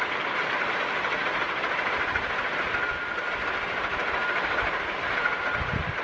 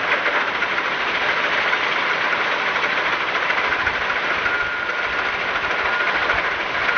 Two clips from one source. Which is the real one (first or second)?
first